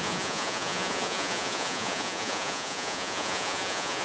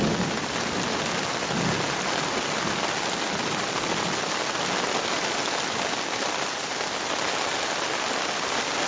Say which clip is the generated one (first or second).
first